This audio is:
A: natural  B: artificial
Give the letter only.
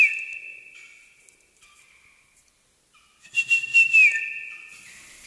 A